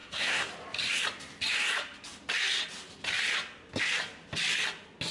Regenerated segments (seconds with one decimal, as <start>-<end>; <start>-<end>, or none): 0.0-0.5